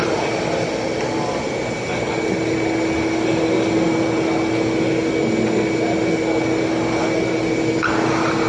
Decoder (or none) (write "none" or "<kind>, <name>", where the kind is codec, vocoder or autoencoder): none